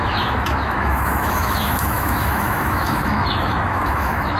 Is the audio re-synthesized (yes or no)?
yes